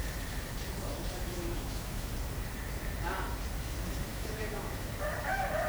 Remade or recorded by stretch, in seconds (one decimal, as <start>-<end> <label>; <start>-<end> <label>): 0.0-1.2 recorded; 1.2-2.1 remade; 2.1-4.1 recorded; 4.1-4.9 remade; 4.9-5.7 recorded